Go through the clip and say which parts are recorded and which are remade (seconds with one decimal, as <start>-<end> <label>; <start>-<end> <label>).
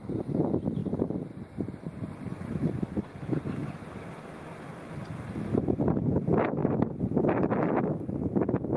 0.0-0.8 recorded; 0.8-2.0 remade; 2.0-5.5 recorded; 5.5-6.1 remade; 6.1-8.8 recorded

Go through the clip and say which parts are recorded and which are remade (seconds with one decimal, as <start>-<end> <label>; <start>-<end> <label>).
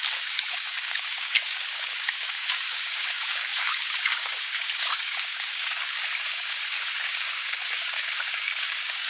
0.0-9.1 remade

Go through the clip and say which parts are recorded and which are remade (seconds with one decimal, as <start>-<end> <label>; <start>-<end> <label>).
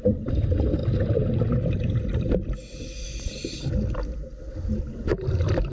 0.0-5.7 recorded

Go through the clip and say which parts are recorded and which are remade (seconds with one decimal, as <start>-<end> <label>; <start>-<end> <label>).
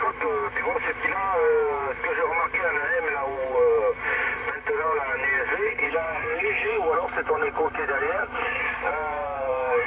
0.0-3.2 remade; 3.2-5.6 recorded; 5.6-9.9 remade